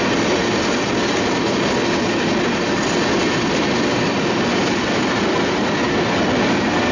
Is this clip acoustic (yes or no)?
yes